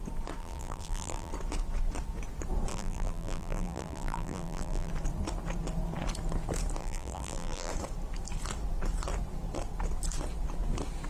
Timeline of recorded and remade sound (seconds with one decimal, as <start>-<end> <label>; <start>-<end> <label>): 0.0-0.4 recorded; 0.4-1.3 remade; 1.3-2.7 recorded; 2.7-4.9 remade; 4.9-6.8 recorded; 6.8-7.7 remade; 7.7-11.1 recorded